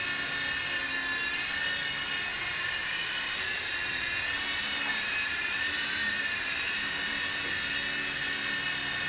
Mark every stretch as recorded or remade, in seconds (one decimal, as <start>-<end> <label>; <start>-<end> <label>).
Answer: 0.0-2.3 recorded; 2.3-6.9 remade; 6.9-9.1 recorded